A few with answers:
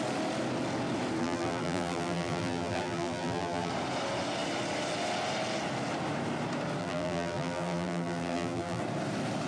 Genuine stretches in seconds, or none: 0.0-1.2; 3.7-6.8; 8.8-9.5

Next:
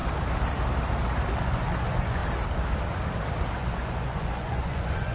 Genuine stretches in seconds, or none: 0.0-1.4; 2.2-3.6

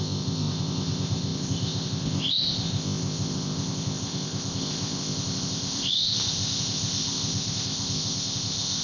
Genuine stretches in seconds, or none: none

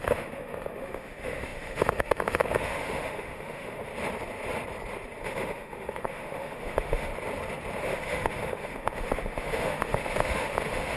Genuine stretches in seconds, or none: 3.9-5.2; 7.1-7.8

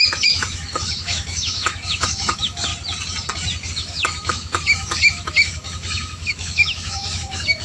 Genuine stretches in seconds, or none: 2.7-3.7